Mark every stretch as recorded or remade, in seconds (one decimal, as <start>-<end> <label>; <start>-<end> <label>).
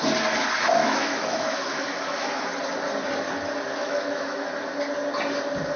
0.0-0.8 recorded; 0.8-2.3 remade; 2.3-3.8 recorded; 3.8-4.5 remade; 4.5-5.8 recorded